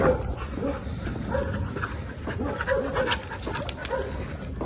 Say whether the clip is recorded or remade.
recorded